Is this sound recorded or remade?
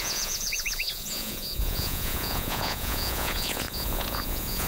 remade